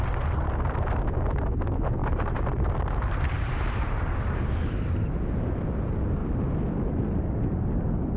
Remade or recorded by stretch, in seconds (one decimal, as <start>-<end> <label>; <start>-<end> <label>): 0.0-2.0 recorded; 2.0-5.1 remade; 5.1-8.2 recorded